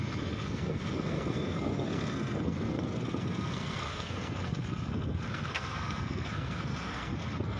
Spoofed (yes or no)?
yes